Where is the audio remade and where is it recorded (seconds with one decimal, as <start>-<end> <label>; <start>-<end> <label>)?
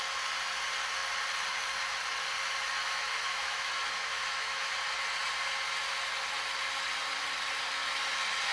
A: 0.0-2.8 recorded; 2.8-4.7 remade; 4.7-8.5 recorded